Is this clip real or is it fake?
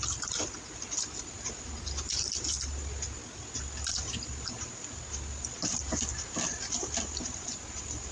real